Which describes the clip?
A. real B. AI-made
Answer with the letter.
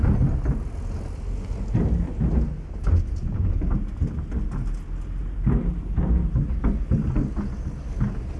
A